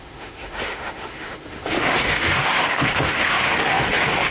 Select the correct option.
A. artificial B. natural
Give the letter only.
A